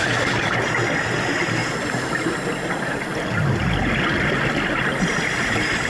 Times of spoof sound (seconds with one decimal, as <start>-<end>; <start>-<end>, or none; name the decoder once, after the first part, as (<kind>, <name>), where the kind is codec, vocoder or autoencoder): none